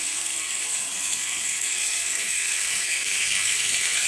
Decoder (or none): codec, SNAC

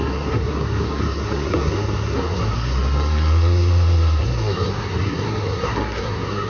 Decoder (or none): codec, SNAC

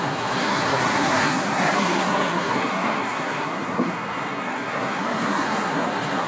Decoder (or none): codec, SNAC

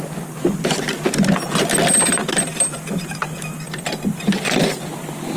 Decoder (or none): none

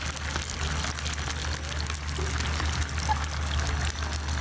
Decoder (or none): none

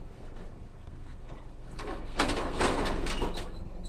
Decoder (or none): codec, SNAC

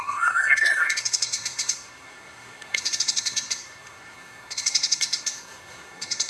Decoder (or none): codec, SNAC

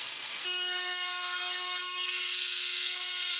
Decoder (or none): codec, SNAC